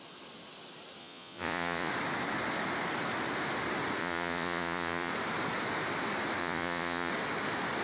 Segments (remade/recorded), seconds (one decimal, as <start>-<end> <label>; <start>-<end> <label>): 0.0-1.0 recorded; 1.0-1.9 remade; 1.9-4.0 recorded; 4.0-5.1 remade; 5.1-6.4 recorded; 6.4-7.1 remade; 7.1-7.8 recorded